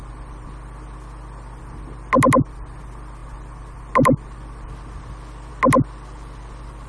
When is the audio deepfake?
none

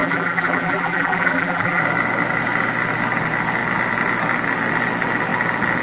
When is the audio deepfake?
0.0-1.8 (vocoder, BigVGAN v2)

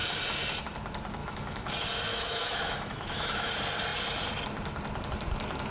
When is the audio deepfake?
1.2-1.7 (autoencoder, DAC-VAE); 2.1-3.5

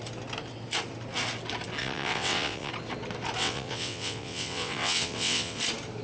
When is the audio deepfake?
1.8-2.7 (vocoder, WaveNeXt); 3.4-5.6